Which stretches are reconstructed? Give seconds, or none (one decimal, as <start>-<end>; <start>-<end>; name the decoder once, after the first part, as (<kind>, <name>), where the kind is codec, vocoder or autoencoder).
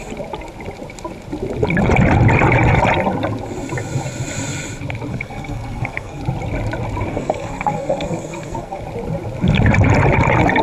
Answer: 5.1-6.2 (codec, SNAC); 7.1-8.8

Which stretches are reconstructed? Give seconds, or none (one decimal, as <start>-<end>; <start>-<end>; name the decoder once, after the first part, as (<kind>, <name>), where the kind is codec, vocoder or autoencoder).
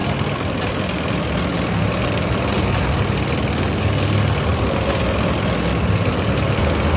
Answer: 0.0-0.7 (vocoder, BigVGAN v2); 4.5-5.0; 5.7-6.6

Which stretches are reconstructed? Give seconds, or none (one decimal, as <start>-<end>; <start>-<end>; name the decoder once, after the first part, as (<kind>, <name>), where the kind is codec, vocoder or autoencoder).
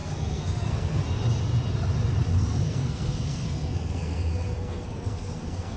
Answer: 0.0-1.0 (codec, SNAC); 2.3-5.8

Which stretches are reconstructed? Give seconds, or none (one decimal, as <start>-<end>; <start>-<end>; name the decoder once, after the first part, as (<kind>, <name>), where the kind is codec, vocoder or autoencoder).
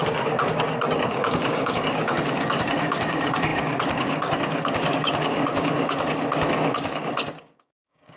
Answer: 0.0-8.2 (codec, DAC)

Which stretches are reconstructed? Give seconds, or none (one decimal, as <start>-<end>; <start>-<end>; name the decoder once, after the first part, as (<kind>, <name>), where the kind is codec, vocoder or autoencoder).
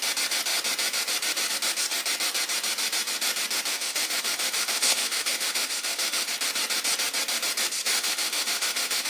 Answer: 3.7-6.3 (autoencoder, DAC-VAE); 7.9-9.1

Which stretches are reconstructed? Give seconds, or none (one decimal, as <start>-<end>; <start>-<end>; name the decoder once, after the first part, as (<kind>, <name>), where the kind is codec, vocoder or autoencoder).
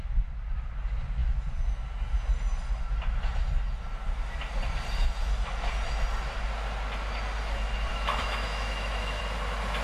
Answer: 7.9-9.2 (autoencoder, DAC-VAE)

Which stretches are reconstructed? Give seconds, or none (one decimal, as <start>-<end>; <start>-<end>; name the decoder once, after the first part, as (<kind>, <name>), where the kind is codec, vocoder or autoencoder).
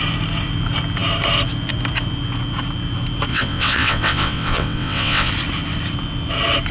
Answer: 3.3-5.3 (vocoder, WaveNeXt)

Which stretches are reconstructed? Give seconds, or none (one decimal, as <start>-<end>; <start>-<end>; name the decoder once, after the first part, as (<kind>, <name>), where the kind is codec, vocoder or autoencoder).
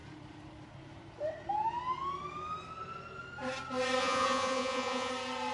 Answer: 4.0-5.1 (vocoder, Vocos)